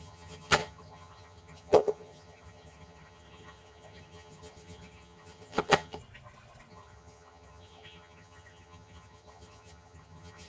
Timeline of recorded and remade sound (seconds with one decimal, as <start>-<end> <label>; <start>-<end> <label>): 0.0-6.0 remade; 6.0-6.7 recorded; 6.7-10.5 remade